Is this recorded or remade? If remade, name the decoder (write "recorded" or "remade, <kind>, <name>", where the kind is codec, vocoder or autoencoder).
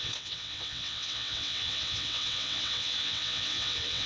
remade, vocoder, WaveNeXt